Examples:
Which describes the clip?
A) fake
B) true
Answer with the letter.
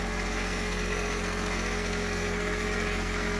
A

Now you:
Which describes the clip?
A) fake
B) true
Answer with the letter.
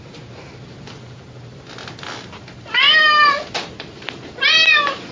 B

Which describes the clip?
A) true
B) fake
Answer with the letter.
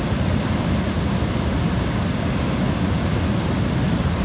A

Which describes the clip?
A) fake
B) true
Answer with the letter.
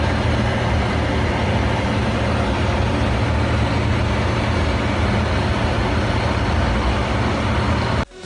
B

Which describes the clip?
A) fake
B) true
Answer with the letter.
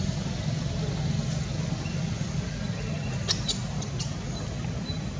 B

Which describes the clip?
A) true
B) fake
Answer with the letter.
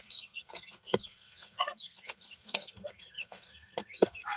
B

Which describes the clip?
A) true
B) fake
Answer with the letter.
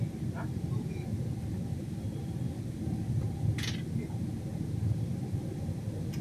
A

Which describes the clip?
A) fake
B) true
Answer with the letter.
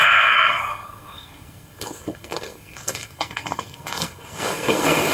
A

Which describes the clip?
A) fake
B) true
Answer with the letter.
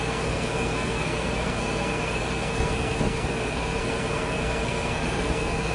A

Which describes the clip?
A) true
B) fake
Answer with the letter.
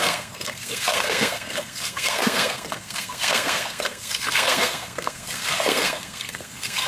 B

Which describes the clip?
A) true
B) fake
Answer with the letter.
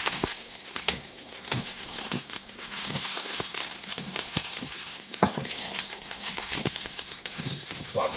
B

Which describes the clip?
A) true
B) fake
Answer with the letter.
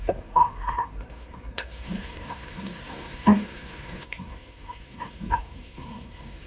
B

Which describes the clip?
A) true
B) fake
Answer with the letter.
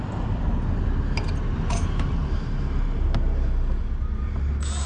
A